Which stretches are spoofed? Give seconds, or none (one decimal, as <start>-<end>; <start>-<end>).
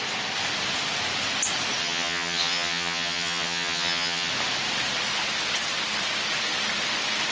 1.8-4.3